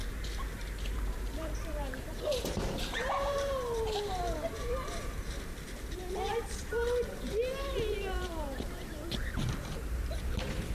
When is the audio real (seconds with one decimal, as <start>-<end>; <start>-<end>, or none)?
none